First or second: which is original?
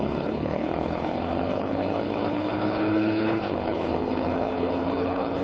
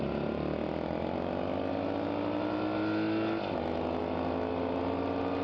second